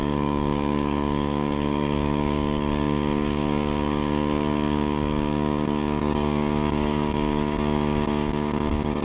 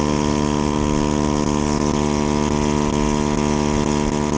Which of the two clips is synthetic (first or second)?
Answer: first